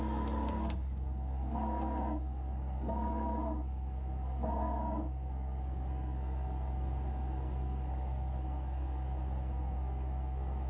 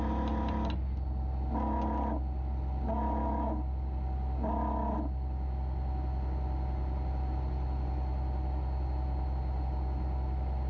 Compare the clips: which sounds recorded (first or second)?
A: second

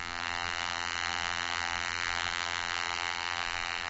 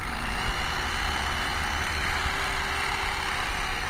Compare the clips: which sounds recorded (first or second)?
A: second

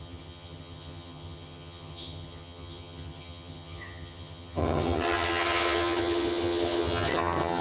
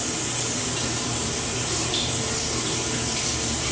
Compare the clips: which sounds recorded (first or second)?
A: second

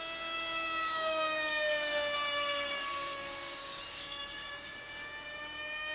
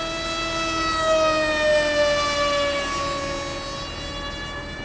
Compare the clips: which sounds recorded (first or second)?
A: second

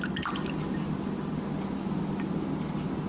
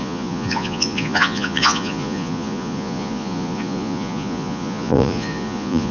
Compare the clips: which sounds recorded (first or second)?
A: first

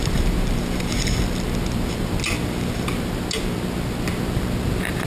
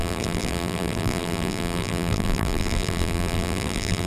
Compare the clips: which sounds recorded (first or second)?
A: first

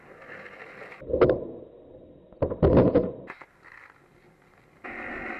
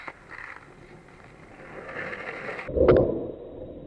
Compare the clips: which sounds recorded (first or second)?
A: first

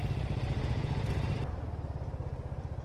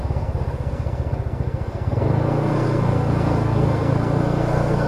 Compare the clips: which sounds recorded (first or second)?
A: first